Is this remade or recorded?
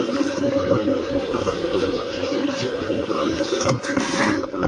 remade